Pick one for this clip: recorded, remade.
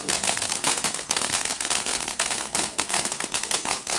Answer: remade